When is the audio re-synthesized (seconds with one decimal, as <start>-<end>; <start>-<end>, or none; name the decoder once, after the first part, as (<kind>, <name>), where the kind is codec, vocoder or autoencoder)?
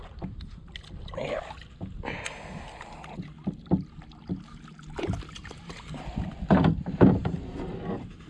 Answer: none